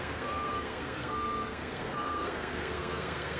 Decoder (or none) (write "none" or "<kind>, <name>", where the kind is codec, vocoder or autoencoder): codec, SNAC